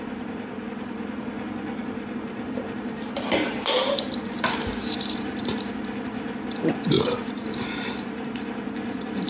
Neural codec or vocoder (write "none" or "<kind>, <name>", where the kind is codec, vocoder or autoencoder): vocoder, BigVGAN v2